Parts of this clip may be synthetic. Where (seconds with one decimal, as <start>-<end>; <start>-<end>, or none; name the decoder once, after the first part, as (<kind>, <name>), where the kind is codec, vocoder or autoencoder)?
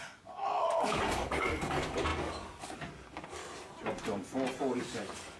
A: 0.0-3.4 (codec, DAC); 5.0-5.4